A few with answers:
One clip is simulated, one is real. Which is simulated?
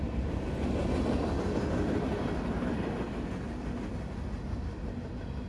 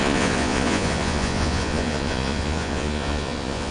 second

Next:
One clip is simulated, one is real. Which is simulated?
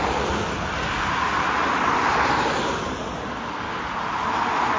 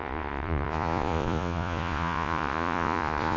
second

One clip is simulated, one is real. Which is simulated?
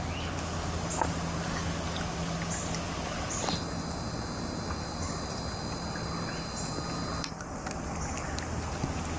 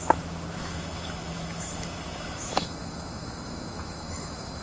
second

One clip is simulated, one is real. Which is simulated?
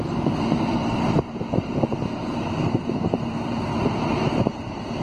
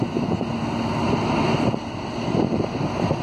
first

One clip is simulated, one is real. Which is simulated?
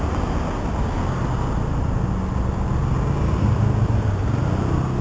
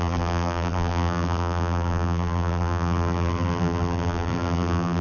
second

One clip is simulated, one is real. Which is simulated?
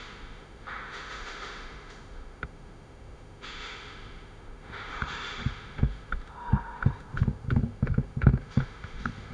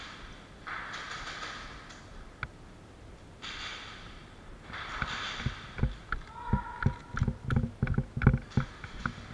first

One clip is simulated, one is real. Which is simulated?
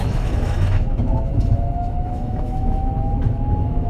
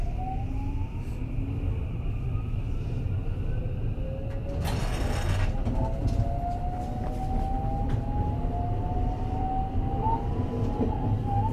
first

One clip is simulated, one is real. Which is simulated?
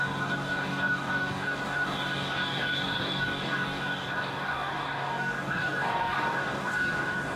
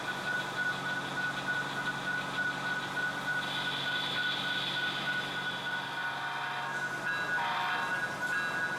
first